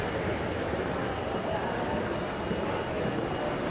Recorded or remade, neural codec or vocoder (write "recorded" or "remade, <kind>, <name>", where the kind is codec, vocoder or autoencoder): recorded